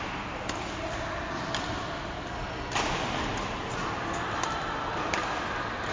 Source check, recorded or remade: recorded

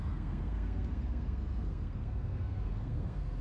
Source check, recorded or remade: remade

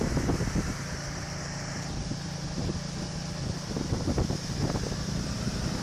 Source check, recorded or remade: recorded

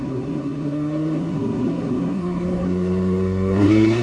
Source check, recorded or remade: remade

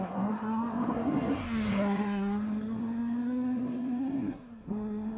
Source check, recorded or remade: remade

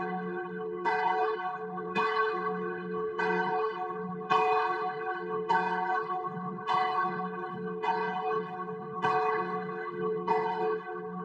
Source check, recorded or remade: remade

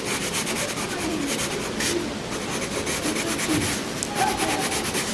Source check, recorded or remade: recorded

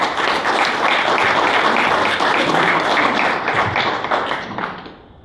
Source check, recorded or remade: recorded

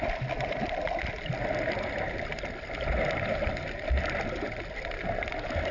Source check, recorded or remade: recorded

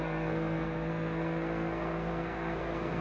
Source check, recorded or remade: remade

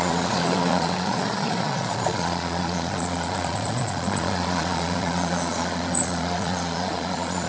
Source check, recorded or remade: remade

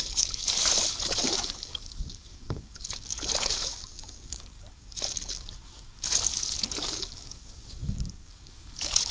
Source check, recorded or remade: remade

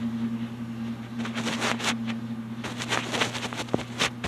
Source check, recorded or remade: recorded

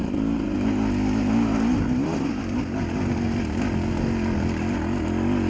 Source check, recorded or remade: recorded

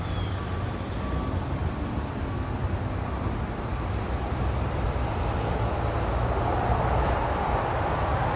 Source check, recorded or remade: remade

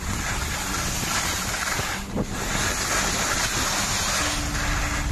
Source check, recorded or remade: recorded